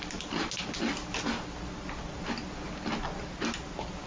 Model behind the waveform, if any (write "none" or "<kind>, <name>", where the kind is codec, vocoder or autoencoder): none